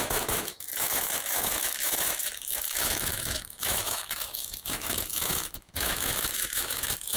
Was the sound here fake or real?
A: fake